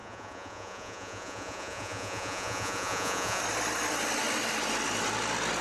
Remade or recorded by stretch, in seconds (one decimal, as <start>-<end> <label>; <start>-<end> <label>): 0.0-3.4 remade; 3.4-5.6 recorded